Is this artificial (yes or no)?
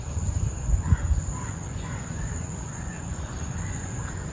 yes